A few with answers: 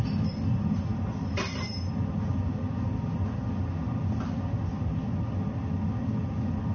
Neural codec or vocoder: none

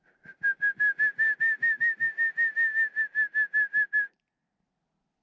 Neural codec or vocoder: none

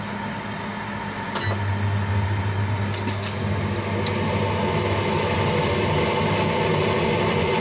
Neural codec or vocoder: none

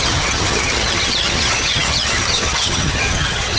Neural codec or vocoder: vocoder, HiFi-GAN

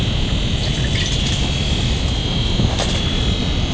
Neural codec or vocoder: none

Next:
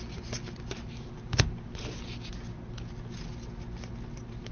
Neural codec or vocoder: none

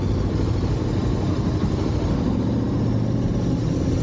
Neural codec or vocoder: none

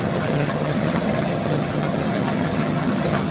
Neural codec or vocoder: vocoder, HiFi-GAN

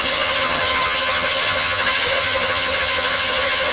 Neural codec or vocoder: vocoder, HiFi-GAN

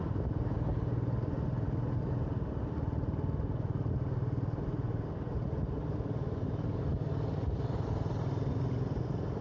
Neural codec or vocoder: none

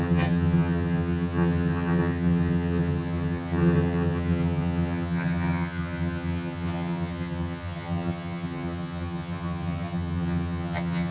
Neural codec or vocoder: vocoder, HiFi-GAN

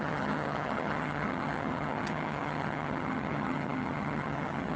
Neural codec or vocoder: vocoder, HiFi-GAN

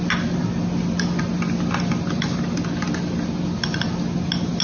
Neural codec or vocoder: none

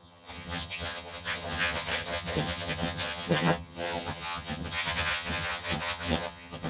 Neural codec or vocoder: vocoder, HiFi-GAN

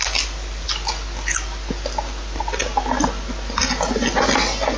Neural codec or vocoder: none